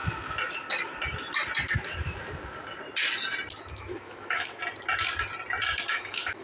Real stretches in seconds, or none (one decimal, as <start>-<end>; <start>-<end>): 0.0-3.6; 4.6-5.9